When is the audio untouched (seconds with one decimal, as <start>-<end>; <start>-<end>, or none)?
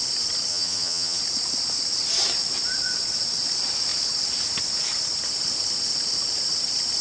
0.0-0.5; 1.2-7.0